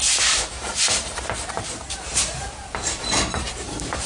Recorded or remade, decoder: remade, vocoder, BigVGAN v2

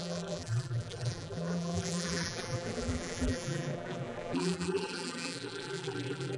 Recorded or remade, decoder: remade, vocoder, BigVGAN v2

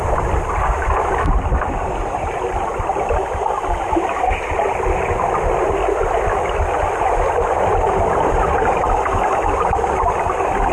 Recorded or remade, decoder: recorded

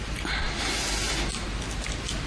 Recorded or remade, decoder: recorded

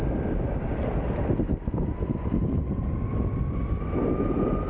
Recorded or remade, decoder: recorded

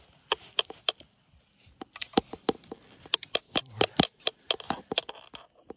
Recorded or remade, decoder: recorded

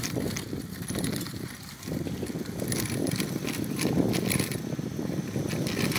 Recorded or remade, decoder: remade, vocoder, BigVGAN v2